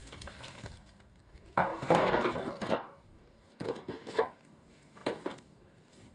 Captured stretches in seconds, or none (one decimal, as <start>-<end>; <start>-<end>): none